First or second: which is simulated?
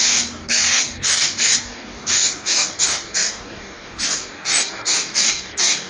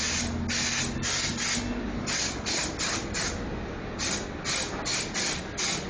first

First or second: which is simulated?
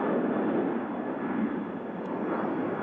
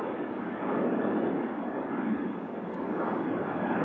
second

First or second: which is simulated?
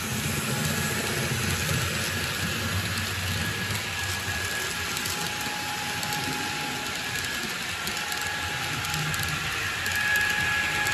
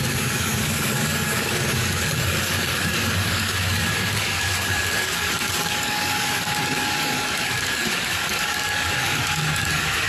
second